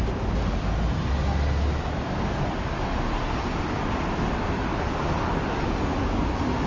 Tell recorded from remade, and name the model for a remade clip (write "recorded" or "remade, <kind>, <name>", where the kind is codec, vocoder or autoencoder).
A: recorded